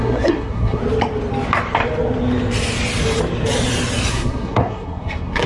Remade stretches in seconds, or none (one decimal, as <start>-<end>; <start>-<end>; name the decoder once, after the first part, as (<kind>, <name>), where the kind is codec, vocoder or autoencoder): 0.0-0.8 (codec, SNAC); 4.1-5.5